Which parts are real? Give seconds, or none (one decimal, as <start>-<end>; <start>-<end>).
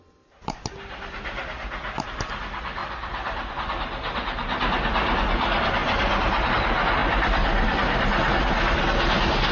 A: 0.0-5.8; 6.5-7.0; 8.8-9.5